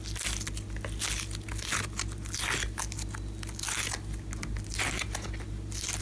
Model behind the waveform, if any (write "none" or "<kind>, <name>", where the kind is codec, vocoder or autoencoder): none